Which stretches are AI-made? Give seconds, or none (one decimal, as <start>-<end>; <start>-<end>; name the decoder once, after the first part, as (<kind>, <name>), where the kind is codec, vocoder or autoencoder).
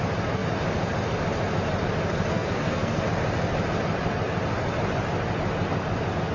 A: 2.3-3.1 (codec, SNAC)